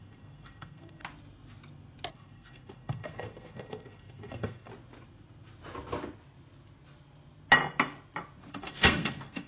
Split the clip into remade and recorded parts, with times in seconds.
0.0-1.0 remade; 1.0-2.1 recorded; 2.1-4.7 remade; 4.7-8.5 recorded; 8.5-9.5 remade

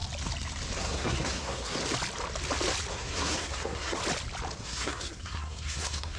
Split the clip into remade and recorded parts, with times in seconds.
0.0-0.8 recorded; 0.8-1.8 remade; 1.8-2.9 recorded; 2.9-4.0 remade; 4.0-4.6 recorded; 4.6-6.2 remade

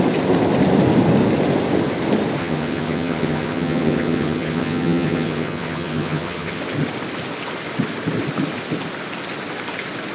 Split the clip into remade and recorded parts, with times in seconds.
0.0-2.4 recorded; 2.4-6.6 remade; 6.6-10.1 recorded

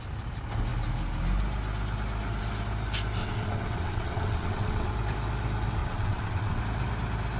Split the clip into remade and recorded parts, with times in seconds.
0.0-3.2 recorded; 3.2-4.9 remade; 4.9-5.8 recorded; 5.8-6.6 remade; 6.6-7.4 recorded

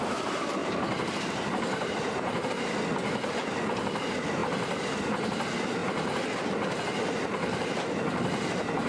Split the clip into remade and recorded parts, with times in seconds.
0.0-0.6 recorded; 0.6-2.5 remade; 2.5-8.9 recorded